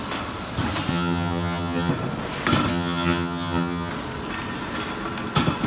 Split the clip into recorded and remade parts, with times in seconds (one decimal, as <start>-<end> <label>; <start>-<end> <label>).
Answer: 0.0-0.9 recorded; 0.9-1.9 remade; 1.9-2.7 recorded; 2.7-3.9 remade; 3.9-5.7 recorded